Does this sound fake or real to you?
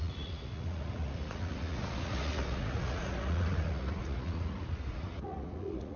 fake